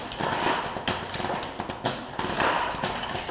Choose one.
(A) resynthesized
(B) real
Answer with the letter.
B